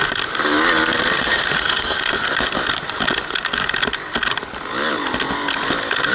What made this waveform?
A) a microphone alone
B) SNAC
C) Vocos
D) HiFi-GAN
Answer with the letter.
A